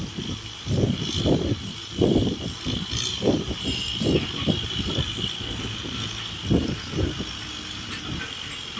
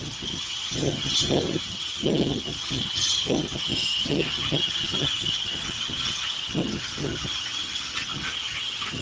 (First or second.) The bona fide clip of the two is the first